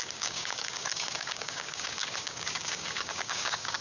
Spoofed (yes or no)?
yes